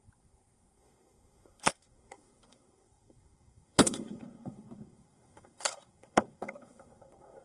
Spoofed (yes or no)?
yes